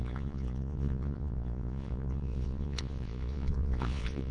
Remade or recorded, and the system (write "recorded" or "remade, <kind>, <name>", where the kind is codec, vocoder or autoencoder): remade, vocoder, Vocos